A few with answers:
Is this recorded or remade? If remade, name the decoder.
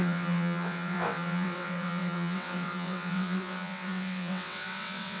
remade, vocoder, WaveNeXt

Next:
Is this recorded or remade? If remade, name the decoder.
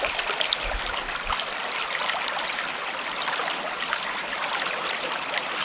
recorded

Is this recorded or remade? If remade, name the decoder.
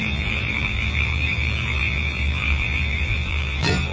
remade, vocoder, BigVGAN v2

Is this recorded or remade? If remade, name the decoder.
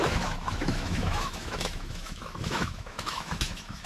remade, autoencoder, DAC-VAE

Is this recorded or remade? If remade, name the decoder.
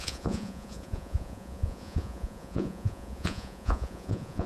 remade, vocoder, Vocos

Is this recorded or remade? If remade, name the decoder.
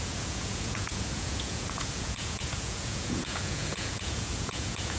remade, vocoder, Vocos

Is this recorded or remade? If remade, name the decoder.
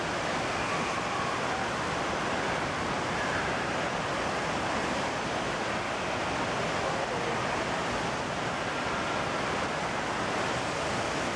recorded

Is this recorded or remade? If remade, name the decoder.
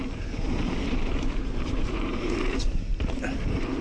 remade, vocoder, BigVGAN v2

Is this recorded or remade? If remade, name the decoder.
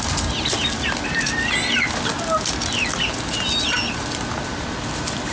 recorded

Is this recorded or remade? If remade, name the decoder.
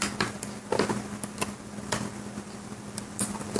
recorded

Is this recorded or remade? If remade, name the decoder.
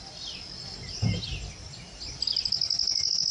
recorded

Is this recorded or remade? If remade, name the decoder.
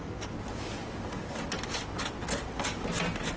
recorded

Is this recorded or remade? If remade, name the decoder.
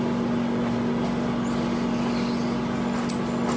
recorded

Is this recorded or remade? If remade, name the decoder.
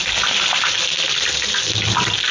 recorded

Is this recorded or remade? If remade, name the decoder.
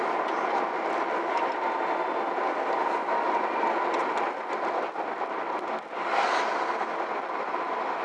recorded